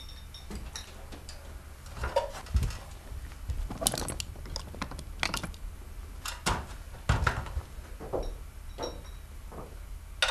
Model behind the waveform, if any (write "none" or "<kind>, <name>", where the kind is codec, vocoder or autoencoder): none